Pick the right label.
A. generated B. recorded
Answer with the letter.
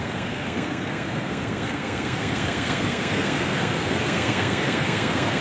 A